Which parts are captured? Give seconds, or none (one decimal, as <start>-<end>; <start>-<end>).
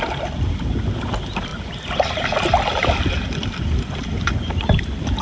0.0-5.2